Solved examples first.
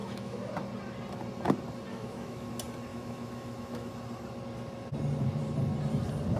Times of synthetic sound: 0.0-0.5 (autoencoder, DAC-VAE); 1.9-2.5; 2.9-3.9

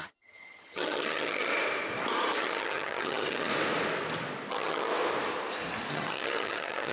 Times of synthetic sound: 0.0-1.5 (vocoder, HiFi-GAN); 2.4-3.5; 4.5-4.9; 5.9-6.9

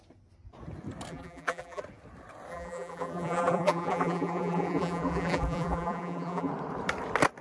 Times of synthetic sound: 1.1-1.8 (vocoder, BigVGAN v2); 2.5-6.5

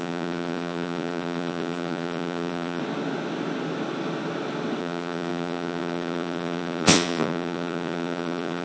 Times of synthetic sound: 0.0-2.8 (vocoder, Vocos); 4.8-8.6

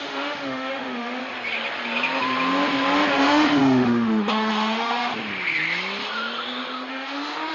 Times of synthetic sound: 0.0-1.2 (autoencoder, DAC-VAE); 3.1-5.1; 6.9-7.5

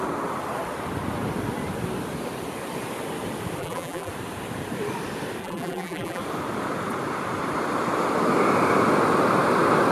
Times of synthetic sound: 3.6-4.1 (vocoder, BigVGAN v2); 5.4-6.2

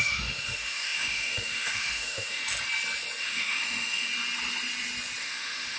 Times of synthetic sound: 0.0-2.4 (autoencoder, DAC-VAE); 3.2-4.1; 5.2-5.8